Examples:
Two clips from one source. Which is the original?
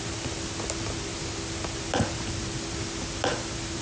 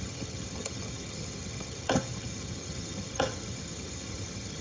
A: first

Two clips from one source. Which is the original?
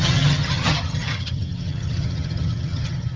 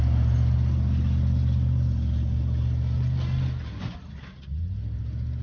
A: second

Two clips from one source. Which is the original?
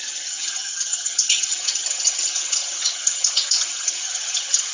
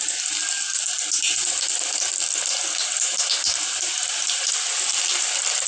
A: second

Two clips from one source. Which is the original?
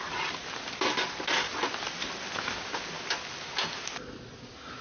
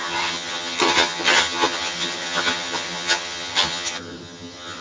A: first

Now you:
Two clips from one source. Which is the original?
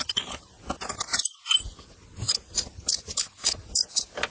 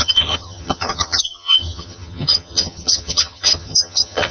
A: first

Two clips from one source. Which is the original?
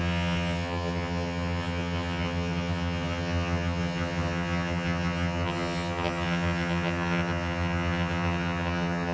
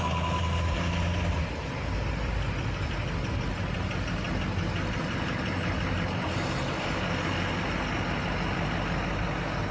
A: second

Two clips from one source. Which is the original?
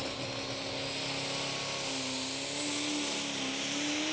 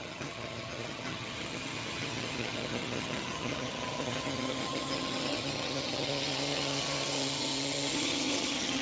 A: first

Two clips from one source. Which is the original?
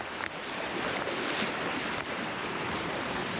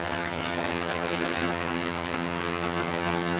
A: first